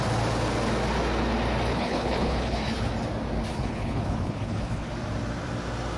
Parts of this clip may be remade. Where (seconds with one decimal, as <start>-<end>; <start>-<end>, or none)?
1.7-2.9; 3.5-4.9